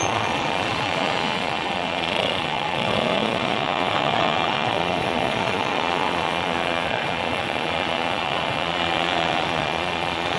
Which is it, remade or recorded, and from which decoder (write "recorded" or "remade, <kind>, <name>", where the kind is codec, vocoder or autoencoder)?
remade, vocoder, Vocos